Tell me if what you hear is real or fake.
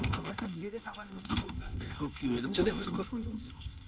fake